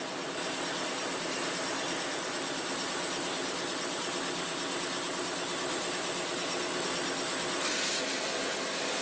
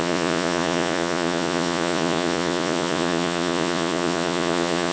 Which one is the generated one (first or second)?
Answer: second